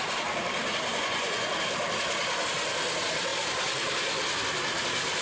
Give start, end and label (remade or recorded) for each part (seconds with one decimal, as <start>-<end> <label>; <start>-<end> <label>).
0.0-0.9 recorded; 0.9-1.5 remade; 1.5-5.2 recorded